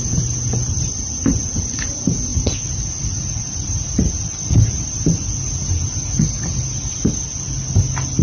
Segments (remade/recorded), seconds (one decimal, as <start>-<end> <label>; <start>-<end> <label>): 0.0-8.2 recorded